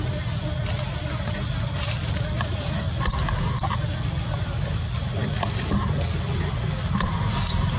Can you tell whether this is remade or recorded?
recorded